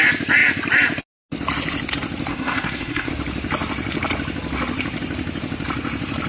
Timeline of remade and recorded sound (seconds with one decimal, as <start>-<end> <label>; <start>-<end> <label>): 0.0-2.3 recorded; 2.3-3.1 remade; 3.1-6.3 recorded